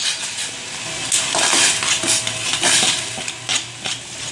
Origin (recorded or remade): recorded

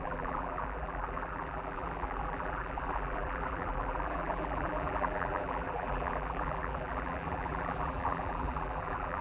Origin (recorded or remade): remade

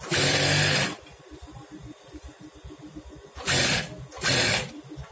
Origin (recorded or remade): remade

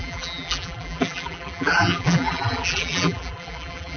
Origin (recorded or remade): remade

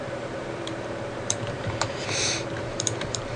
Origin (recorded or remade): remade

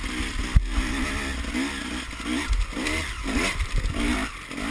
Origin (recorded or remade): recorded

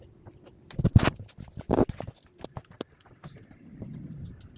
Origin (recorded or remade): recorded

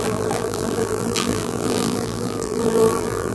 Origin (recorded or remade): remade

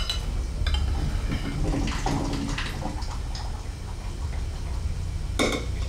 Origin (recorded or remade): recorded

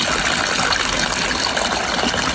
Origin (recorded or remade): recorded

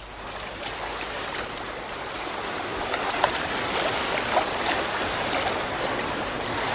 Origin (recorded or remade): recorded